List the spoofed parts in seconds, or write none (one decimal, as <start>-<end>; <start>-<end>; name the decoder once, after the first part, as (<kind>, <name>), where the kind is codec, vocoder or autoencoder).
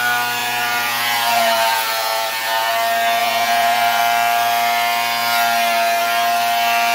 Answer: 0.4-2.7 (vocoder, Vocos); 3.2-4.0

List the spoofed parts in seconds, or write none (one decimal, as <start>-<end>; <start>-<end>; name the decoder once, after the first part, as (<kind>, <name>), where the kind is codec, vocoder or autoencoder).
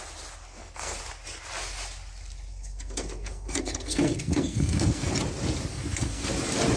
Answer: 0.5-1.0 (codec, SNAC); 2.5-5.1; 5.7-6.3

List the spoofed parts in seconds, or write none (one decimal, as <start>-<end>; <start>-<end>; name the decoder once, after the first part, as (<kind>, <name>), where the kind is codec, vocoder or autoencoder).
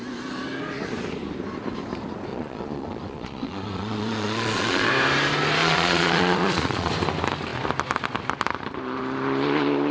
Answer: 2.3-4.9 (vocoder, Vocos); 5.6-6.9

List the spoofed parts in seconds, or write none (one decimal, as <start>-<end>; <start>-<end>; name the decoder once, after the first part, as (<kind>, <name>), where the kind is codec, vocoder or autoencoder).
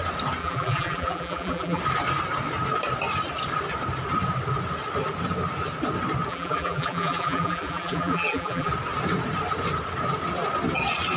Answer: 0.4-1.8 (vocoder, BigVGAN v2); 6.3-8.7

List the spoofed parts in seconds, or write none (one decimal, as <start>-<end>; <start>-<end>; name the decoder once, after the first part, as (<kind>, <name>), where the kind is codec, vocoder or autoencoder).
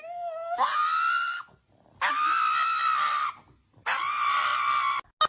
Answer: none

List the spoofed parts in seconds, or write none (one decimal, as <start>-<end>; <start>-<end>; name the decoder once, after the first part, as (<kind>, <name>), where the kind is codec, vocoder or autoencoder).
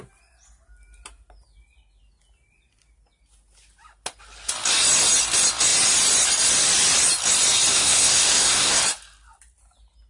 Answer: 7.7-8.8 (codec, SNAC)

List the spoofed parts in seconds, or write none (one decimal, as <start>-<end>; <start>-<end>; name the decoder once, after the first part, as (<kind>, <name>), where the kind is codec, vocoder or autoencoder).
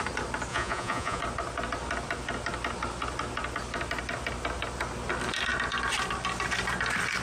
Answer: 0.5-1.2 (vocoder, Vocos)